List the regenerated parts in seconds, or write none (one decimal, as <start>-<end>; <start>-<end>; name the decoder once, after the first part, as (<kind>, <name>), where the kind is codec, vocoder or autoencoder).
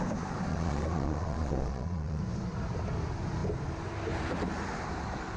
0.5-2.2 (vocoder, Vocos)